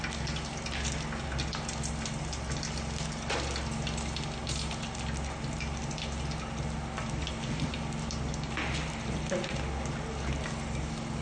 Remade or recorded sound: recorded